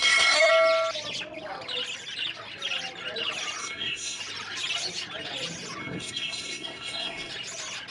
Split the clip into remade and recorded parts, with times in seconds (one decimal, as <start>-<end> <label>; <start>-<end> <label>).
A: 0.0-0.5 remade; 0.5-3.6 recorded; 3.6-4.2 remade; 4.2-5.8 recorded; 5.8-7.3 remade; 7.3-7.9 recorded